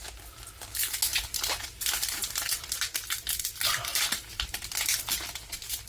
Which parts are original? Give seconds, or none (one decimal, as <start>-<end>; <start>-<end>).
0.0-1.1; 4.6-5.9